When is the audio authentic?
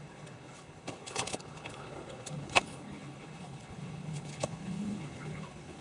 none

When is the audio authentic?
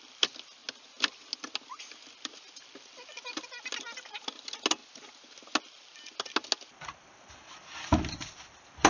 0.0-8.9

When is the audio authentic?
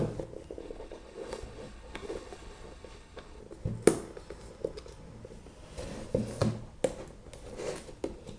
0.0-0.6; 3.4-8.4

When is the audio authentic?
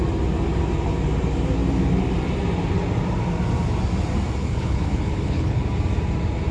0.0-4.4; 5.6-6.5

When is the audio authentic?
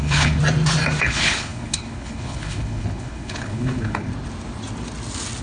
0.4-1.0; 4.1-5.4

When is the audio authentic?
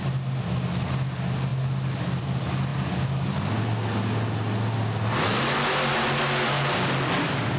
0.0-7.6